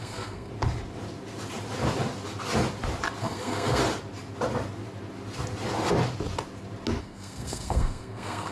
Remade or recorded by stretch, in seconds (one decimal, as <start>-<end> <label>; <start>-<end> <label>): 0.0-0.5 remade; 0.5-3.2 recorded; 3.2-3.8 remade; 3.8-7.0 recorded; 7.0-8.5 remade